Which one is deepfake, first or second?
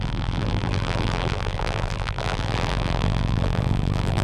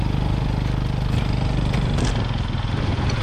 first